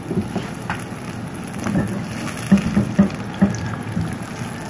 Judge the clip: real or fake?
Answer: real